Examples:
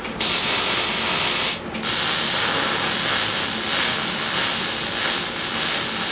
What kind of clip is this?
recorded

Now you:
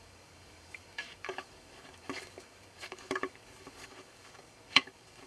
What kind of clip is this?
remade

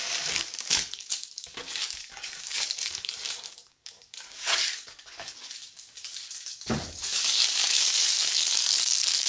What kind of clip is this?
remade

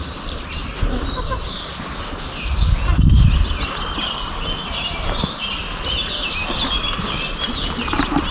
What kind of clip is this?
recorded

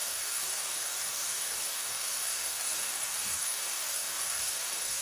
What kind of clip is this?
remade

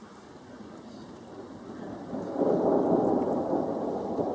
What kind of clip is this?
recorded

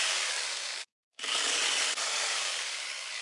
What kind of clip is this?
remade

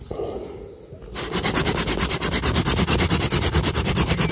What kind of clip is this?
recorded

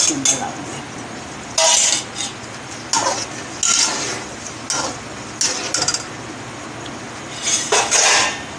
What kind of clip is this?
recorded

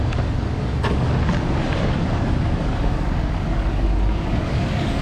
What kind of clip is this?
remade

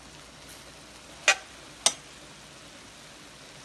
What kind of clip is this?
recorded